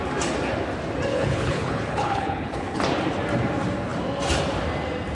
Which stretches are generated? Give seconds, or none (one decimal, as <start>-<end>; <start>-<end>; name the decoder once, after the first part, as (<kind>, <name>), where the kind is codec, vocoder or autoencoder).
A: 1.1-2.8 (codec, HILCodec)